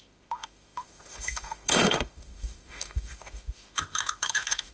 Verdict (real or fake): fake